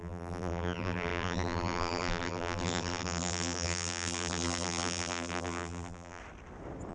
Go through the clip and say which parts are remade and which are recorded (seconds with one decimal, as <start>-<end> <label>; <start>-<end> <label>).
0.0-6.2 remade; 6.2-6.9 recorded